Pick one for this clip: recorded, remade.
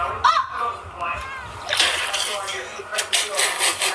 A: recorded